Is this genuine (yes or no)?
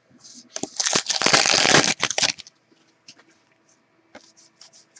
yes